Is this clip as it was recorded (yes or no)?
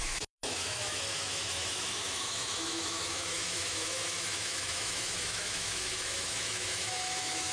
no